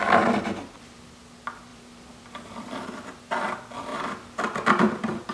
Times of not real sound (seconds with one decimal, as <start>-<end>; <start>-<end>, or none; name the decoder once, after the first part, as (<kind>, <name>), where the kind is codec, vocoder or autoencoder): 1.7-3.5 (vocoder, BigVGAN v2); 3.9-5.3